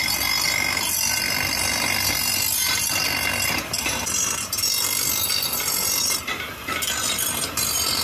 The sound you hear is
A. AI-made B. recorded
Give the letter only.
B